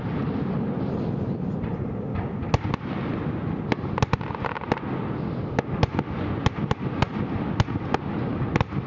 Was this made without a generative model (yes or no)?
yes